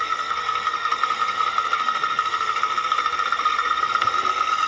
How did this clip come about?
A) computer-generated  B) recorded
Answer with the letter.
A